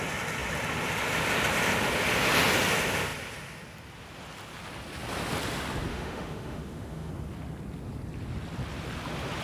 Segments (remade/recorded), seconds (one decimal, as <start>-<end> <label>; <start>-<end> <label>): 0.0-5.9 recorded; 5.9-7.1 remade; 7.1-9.4 recorded